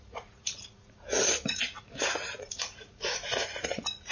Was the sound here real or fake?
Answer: fake